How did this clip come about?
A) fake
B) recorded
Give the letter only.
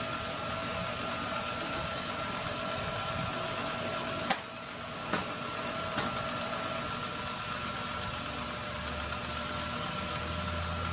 B